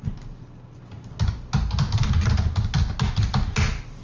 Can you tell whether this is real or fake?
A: real